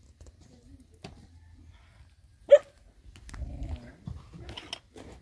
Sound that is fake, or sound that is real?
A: real